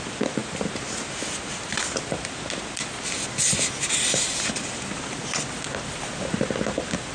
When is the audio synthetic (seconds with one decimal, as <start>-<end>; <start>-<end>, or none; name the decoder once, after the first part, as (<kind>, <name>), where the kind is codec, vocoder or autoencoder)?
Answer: none